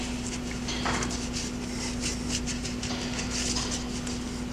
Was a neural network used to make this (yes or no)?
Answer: no